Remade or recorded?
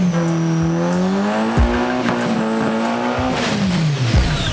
recorded